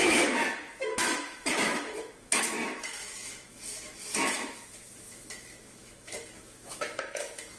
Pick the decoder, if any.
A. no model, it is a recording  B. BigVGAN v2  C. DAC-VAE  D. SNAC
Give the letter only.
C